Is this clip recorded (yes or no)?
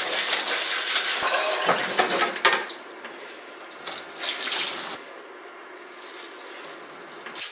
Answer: yes